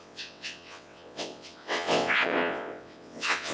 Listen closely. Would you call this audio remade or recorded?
remade